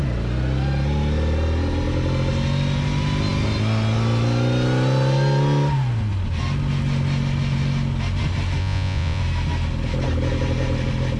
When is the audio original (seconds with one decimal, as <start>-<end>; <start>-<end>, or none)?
0.0-8.6; 9.2-11.2